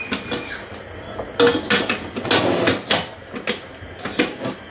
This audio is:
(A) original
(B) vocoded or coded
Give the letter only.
A